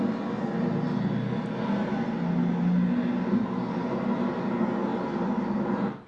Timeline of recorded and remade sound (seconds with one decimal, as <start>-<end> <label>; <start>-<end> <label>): 0.0-6.1 recorded